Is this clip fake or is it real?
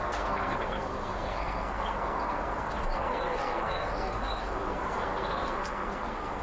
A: fake